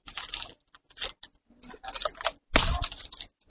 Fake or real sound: real